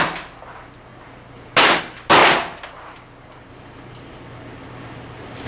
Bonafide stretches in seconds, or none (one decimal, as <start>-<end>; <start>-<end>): 0.0-5.5